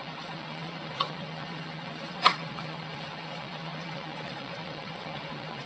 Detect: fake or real fake